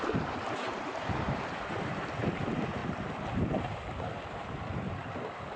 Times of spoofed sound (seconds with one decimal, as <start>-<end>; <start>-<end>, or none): 0.7-2.0